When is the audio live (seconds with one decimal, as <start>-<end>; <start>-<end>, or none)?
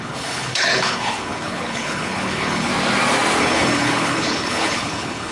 2.7-3.4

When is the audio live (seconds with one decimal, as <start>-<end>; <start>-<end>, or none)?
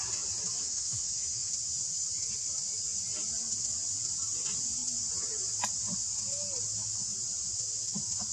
0.0-0.6; 1.5-8.3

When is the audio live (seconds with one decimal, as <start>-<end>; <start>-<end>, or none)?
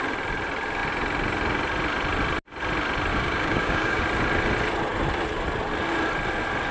0.0-3.1; 4.0-6.7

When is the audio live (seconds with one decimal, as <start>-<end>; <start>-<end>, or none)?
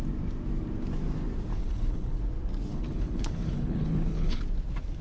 0.0-1.5; 2.2-2.7; 4.4-5.0